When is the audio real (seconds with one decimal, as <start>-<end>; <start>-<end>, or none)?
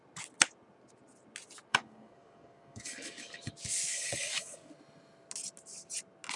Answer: 0.0-1.7; 3.5-3.9; 4.7-6.4